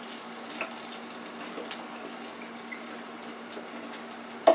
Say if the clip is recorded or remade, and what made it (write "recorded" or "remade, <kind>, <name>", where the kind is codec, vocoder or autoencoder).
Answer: recorded